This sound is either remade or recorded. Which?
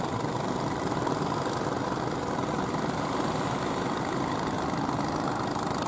recorded